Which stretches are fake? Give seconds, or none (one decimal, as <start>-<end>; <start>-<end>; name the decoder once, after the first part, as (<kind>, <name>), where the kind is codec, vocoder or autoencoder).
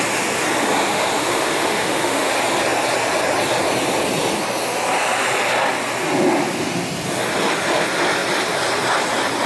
0.9-2.3 (autoencoder, DAC-VAE)